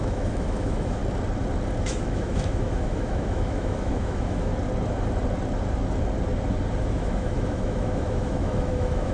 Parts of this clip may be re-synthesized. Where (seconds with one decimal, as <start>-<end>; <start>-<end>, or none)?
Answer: 0.0-1.0; 1.8-4.5; 6.8-9.1